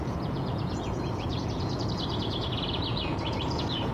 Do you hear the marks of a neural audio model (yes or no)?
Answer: yes